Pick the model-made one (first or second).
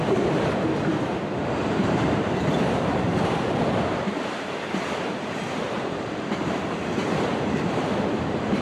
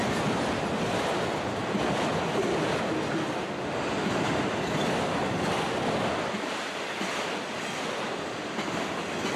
first